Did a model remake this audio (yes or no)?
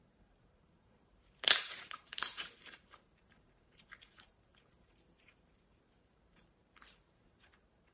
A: yes